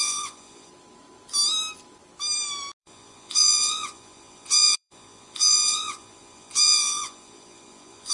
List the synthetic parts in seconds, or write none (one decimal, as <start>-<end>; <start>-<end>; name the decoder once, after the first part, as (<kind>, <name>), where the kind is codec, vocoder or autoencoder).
0.0-0.7 (vocoder, Vocos); 2.8-8.1